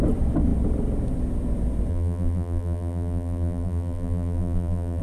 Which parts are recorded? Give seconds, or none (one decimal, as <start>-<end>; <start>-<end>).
0.0-1.9